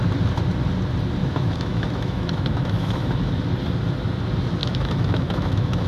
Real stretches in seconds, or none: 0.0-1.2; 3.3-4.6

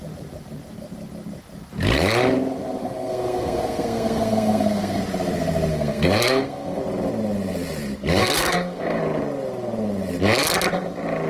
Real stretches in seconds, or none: 0.0-2.8; 5.0-5.7; 6.8-8.2; 9.0-11.3

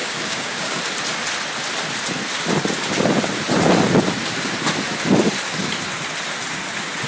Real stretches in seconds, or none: 0.8-7.1

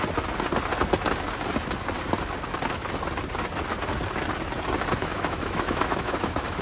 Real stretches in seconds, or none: 0.0-5.0

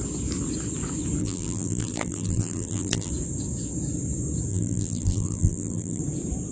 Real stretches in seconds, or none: 0.0-1.2; 3.1-4.5; 6.0-6.5

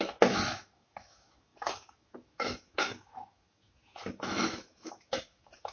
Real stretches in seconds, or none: none

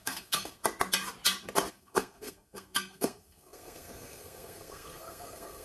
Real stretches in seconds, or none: 0.6-1.7